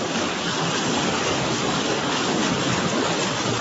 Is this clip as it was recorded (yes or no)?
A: no